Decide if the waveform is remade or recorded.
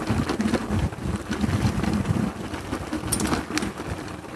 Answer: recorded